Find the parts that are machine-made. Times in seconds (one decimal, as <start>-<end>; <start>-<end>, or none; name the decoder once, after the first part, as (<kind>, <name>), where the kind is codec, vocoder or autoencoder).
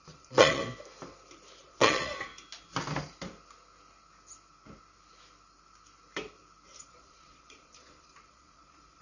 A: 0.0-0.6 (vocoder, Vocos); 1.6-2.3; 6.8-9.0